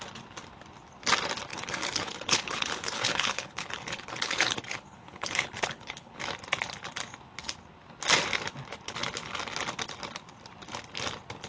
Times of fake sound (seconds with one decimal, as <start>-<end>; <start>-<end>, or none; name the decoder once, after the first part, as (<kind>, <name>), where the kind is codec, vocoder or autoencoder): 1.5-6.2 (codec, HILCodec)